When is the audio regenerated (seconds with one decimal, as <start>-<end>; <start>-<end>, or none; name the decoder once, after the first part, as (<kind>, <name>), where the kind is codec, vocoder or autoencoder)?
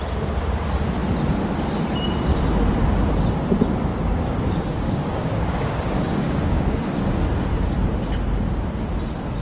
3.9-7.2 (codec, DAC)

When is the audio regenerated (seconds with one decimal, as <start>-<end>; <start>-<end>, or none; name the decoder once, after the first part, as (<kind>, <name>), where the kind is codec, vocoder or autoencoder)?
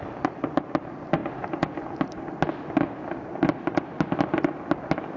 none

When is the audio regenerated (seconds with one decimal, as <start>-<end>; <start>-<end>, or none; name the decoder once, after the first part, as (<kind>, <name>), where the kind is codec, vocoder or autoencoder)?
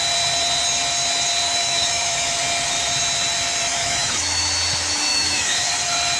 1.5-2.4 (autoencoder, DAC-VAE); 3.7-4.4; 5.1-5.7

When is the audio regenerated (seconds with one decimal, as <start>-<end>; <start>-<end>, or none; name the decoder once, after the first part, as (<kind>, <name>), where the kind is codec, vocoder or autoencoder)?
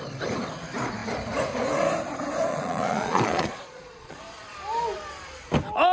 2.5-4.2 (vocoder, Vocos)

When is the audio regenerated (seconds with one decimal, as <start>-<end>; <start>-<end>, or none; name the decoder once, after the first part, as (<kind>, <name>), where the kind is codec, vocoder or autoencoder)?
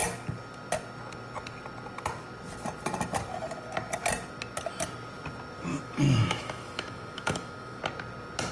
5.7-7.8 (autoencoder, DAC-VAE)